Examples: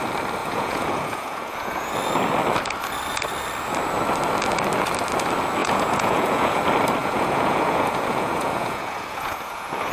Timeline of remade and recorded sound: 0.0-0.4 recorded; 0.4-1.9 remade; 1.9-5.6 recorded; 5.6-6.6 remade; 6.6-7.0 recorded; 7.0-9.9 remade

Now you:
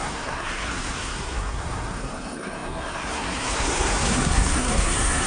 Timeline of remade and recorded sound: 0.0-5.3 remade

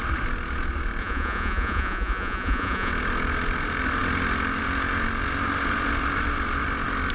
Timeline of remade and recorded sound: 0.0-1.0 recorded; 1.0-2.9 remade; 2.9-7.1 recorded

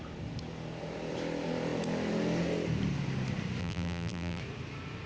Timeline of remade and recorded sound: 0.0-3.6 recorded; 3.6-4.4 remade; 4.4-5.1 recorded

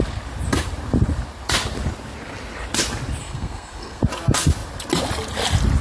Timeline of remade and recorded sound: 0.0-3.2 recorded; 3.2-4.0 remade; 4.0-5.8 recorded

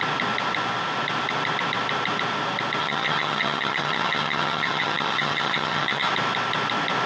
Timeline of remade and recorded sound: 0.0-2.8 recorded; 2.8-6.1 remade; 6.1-7.1 recorded